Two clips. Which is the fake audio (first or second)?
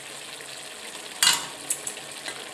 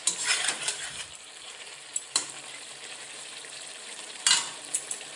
second